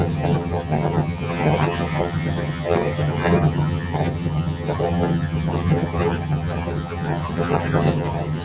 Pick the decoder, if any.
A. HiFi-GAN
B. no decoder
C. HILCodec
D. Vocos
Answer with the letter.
A